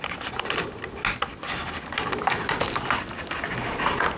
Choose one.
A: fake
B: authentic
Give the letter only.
B